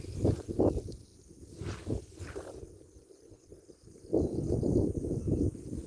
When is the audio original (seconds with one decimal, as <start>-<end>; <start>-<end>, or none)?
0.0-5.9